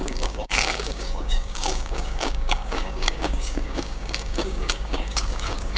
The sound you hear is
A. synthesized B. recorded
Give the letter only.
A